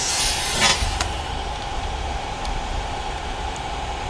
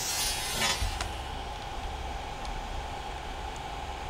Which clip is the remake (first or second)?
first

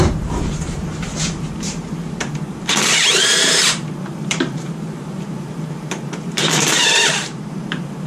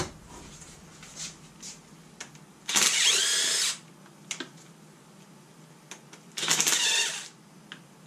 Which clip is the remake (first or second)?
first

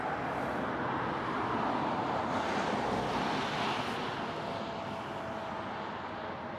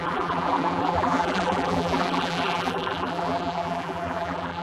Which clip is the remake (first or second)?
second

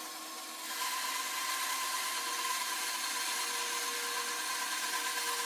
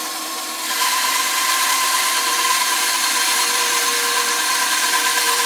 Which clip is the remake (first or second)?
second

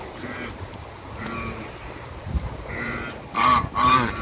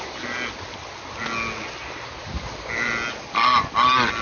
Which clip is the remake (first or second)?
first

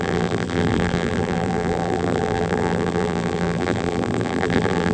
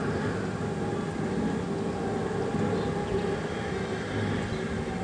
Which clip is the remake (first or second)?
first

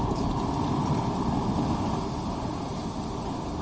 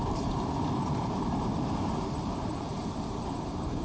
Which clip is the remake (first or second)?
second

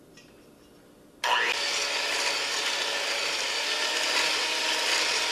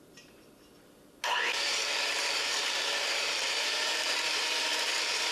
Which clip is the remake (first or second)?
second